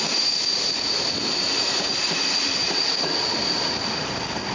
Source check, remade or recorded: recorded